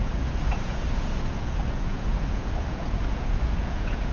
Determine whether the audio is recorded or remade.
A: remade